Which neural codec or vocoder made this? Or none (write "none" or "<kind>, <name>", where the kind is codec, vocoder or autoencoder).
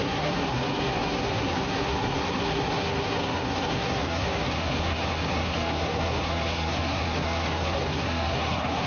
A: codec, SNAC